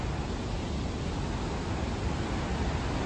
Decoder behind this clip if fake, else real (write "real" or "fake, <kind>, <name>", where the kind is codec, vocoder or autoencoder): real